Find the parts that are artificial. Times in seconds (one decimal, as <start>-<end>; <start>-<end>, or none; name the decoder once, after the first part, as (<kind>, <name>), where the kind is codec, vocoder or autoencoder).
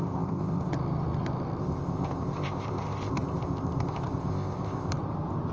0.0-0.7 (codec, ZipCodec); 1.6-4.9